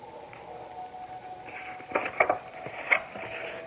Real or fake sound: real